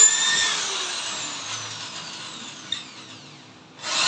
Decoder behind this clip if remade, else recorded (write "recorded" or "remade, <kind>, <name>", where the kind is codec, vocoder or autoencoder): recorded